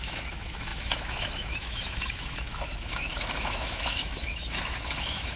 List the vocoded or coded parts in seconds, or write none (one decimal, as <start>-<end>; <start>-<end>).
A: 0.0-5.4

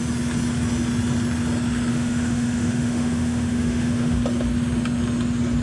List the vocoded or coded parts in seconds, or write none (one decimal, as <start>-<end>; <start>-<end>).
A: 1.9-4.2

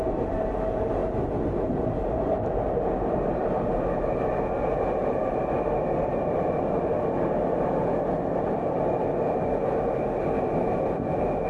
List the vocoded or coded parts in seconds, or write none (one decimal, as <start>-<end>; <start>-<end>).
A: none

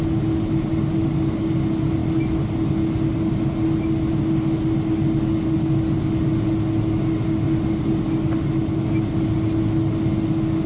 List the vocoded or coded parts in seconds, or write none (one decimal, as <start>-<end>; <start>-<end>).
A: none

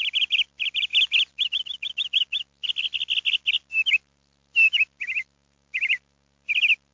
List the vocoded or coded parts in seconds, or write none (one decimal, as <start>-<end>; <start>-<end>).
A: none

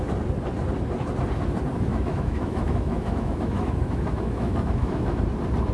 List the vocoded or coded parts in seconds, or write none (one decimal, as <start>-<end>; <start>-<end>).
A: 1.9-5.2